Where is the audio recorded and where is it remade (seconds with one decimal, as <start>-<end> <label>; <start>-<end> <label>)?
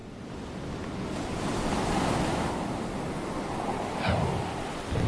0.0-5.1 recorded